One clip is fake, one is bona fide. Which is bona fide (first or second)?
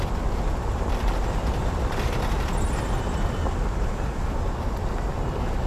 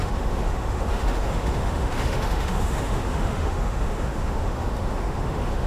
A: first